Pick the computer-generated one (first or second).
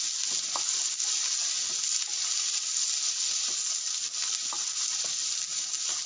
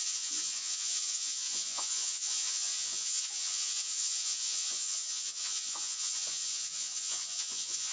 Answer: second